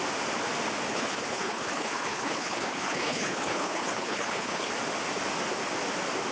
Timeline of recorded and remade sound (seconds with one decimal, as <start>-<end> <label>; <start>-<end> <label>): 0.0-0.9 recorded; 0.9-4.7 remade; 4.7-6.3 recorded